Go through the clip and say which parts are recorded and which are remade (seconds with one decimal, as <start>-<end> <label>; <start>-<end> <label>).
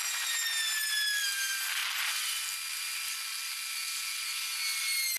0.0-5.2 recorded